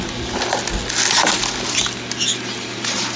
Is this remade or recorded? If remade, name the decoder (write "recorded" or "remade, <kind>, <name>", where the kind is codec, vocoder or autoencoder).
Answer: recorded